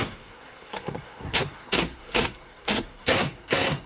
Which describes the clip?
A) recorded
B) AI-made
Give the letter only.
B